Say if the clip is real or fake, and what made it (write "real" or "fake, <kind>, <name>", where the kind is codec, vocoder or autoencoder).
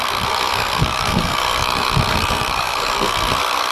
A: fake, codec, SNAC